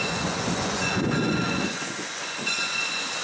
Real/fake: fake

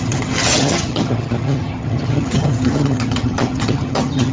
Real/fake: fake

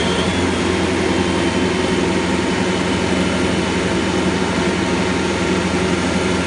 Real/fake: real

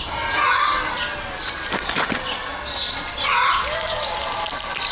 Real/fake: real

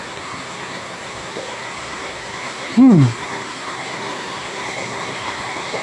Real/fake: fake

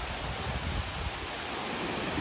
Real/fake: real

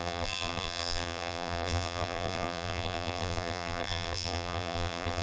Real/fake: fake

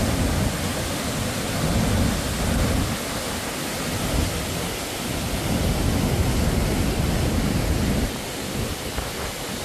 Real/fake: real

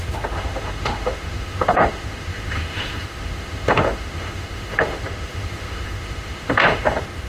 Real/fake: fake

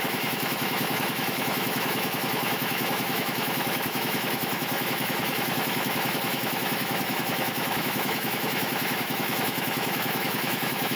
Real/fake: fake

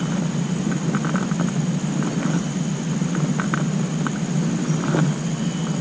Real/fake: real